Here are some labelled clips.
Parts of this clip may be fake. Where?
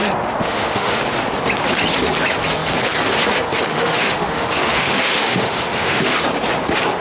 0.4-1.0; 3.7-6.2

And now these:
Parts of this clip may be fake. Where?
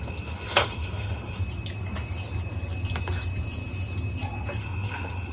0.0-1.4; 4.6-5.3